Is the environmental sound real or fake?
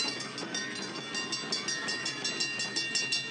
real